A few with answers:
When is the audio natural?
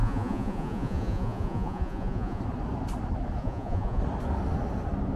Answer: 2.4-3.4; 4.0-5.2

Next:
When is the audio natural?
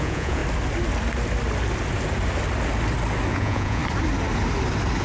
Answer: 0.4-3.3; 3.8-5.0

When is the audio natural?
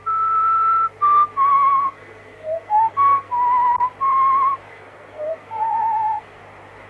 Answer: 0.0-1.5; 3.3-4.7; 6.4-6.9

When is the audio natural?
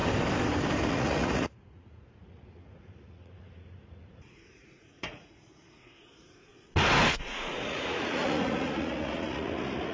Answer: 0.0-0.9; 6.5-7.1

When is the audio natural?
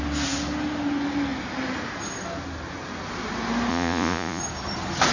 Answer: 0.0-3.7; 4.4-5.1